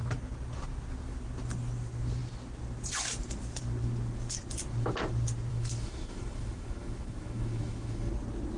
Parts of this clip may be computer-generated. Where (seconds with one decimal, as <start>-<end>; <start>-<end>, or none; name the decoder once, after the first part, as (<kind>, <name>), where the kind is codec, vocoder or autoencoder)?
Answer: 5.5-8.1 (autoencoder, DAC-VAE)